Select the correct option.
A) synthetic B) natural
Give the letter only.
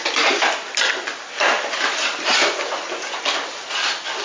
B